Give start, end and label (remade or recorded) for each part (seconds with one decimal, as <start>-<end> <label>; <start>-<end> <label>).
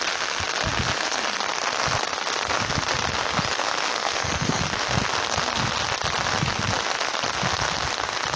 0.0-3.9 recorded; 3.9-4.6 remade; 4.6-8.4 recorded